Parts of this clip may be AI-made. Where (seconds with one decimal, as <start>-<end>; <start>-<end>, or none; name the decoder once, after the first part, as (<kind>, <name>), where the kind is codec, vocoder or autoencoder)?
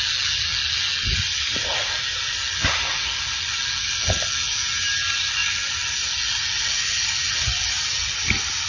none